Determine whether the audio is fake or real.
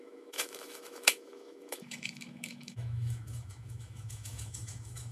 fake